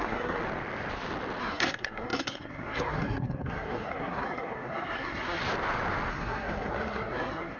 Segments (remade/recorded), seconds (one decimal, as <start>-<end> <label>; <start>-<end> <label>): 0.0-0.4 remade; 0.4-1.4 recorded; 1.4-5.4 remade; 5.4-6.1 recorded; 6.1-7.6 remade